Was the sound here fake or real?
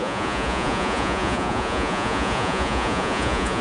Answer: fake